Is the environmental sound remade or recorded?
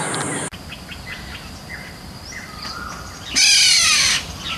recorded